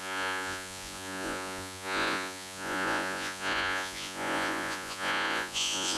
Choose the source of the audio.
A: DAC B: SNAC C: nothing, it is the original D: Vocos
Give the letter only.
D